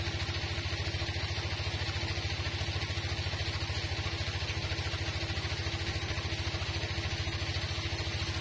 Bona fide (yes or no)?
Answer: yes